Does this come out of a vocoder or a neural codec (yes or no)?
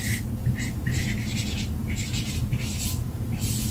yes